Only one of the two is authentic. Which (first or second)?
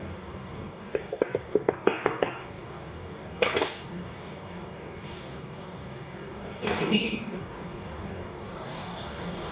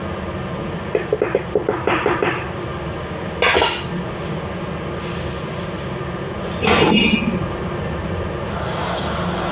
second